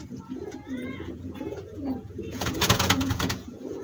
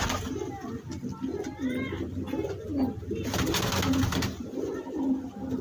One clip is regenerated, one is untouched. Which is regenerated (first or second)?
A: first